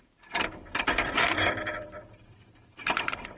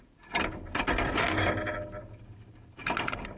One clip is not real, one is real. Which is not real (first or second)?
first